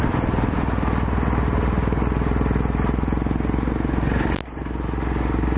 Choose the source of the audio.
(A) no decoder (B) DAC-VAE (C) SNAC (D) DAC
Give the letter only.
A